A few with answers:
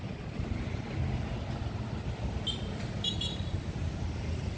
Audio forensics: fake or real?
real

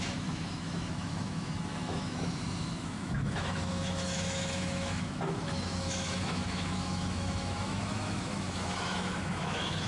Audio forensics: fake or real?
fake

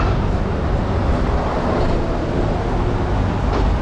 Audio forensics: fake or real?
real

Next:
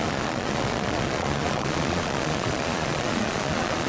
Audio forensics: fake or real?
fake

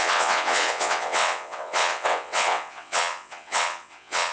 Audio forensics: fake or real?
fake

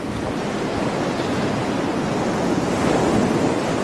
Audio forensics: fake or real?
real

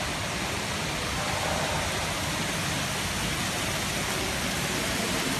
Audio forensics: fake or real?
real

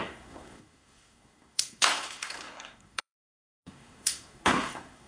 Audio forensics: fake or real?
fake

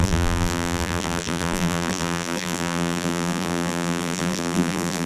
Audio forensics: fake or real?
fake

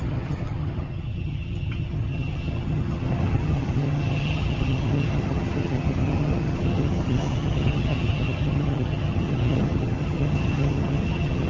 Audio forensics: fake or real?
fake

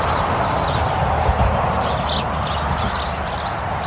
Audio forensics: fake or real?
real